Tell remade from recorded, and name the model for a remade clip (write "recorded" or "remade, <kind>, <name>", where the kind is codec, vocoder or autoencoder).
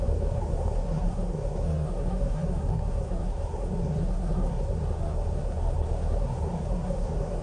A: remade, codec, SNAC